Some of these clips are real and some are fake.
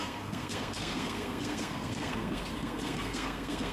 fake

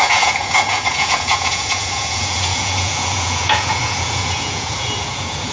fake